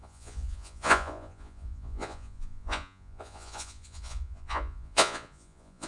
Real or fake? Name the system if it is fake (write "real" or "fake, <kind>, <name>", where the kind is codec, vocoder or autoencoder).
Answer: fake, vocoder, Vocos